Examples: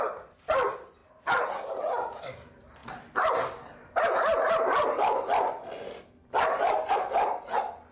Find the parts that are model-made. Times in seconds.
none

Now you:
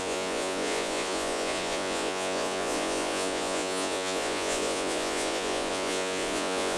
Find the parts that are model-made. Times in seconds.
0.0-6.8 (vocoder, Vocos)